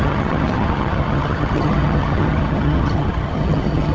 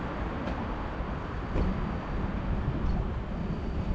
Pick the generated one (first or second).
first